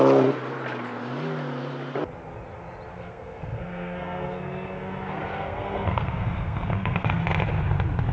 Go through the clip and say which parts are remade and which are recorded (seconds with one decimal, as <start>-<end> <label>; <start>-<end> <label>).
0.0-2.9 recorded; 2.9-7.2 remade; 7.2-8.1 recorded